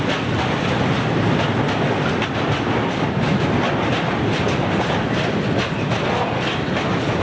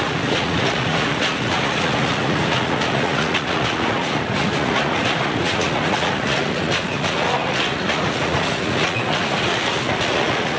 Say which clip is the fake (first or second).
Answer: second